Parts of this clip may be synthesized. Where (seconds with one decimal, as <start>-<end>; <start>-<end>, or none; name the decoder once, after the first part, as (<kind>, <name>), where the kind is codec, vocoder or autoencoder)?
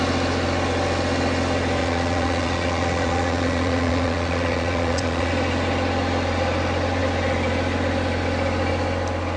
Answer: 1.8-5.3 (vocoder, Vocos)